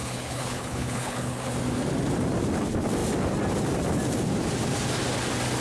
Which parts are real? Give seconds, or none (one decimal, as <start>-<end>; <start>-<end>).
1.5-5.6